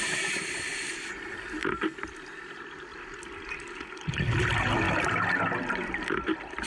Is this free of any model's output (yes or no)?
yes